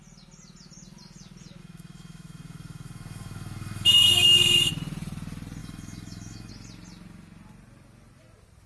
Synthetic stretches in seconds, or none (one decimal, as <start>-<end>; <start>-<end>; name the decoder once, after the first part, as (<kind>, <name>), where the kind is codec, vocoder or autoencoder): 1.6-4.7 (autoencoder, DAC-VAE); 5.6-6.5